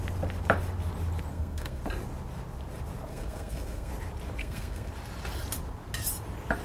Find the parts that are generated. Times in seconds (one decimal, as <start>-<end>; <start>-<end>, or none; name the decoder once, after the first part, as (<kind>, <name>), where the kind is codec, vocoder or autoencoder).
1.3-1.8 (codec, SNAC); 3.1-3.9; 4.4-4.9